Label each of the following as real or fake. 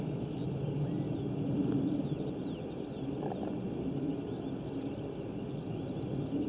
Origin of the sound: real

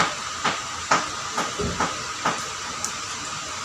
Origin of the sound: fake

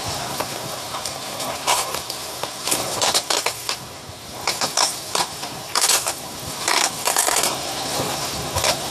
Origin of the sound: fake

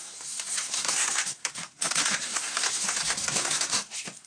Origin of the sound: fake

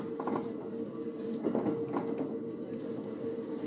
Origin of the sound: real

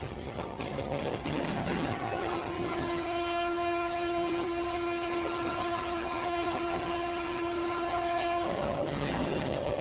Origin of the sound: fake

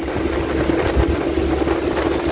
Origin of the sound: real